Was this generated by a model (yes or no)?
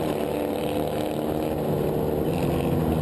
no